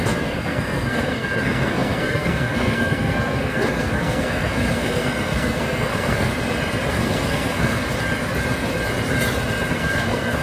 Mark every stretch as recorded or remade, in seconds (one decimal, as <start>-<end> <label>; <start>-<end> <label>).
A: 0.0-6.3 remade; 6.3-6.9 recorded; 6.9-7.8 remade; 7.8-9.7 recorded; 9.7-10.4 remade